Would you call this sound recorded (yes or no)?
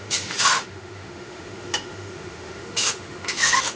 no